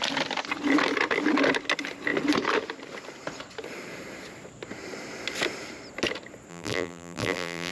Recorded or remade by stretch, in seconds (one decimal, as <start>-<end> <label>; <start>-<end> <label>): 0.0-6.5 recorded; 6.5-7.7 remade

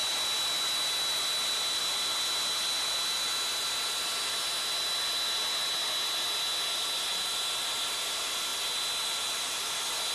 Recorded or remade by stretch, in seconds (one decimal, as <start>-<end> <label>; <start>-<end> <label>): 0.0-10.1 recorded

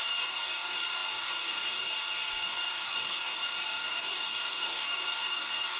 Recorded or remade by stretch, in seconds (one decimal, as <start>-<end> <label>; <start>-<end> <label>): 0.0-5.8 remade

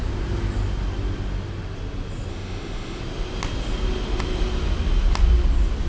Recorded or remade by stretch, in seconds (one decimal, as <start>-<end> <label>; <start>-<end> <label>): 0.0-2.3 recorded; 2.3-3.0 remade; 3.0-5.9 recorded